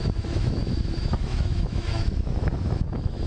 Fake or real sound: fake